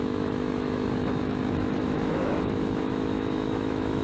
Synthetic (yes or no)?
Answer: yes